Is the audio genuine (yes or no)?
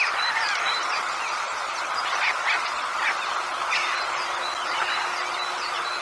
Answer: yes